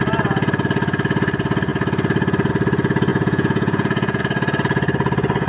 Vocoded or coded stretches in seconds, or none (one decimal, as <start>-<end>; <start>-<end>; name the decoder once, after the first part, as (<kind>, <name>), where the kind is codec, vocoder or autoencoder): 3.1-4.2 (vocoder, Vocos)